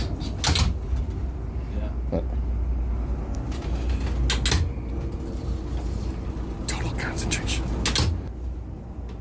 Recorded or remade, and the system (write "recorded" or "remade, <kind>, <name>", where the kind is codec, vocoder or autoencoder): recorded